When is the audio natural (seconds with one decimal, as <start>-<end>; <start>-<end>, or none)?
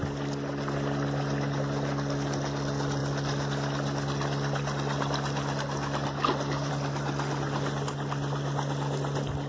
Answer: 0.0-9.5